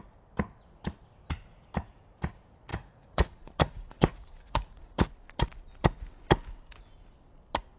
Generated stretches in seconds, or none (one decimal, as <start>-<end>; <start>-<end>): 2.7-5.1

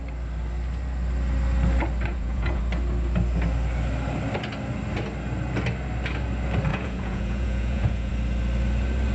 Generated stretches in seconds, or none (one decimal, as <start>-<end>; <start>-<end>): 2.1-2.6; 6.7-8.1

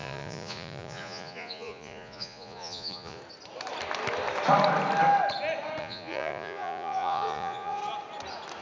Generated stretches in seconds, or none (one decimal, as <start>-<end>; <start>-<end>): 0.0-3.2; 5.8-7.8

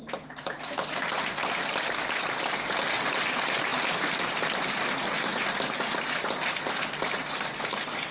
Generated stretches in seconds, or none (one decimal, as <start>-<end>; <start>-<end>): none

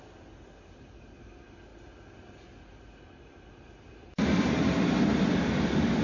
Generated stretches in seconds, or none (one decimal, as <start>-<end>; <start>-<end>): none

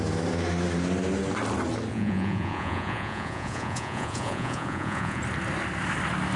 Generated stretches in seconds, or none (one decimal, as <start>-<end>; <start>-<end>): 1.9-5.2

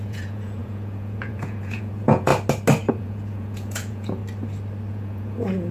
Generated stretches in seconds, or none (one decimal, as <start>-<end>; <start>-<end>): 0.0-2.3; 2.9-4.2; 4.9-5.7